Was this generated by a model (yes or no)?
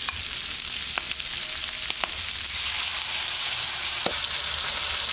no